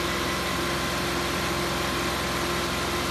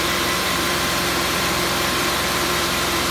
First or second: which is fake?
second